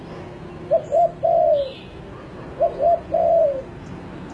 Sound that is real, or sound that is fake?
real